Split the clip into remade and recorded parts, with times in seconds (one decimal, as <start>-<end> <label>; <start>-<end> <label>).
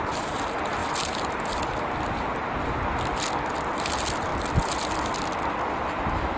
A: 0.0-0.8 recorded; 0.8-2.1 remade; 2.1-4.3 recorded; 4.3-5.2 remade; 5.2-6.4 recorded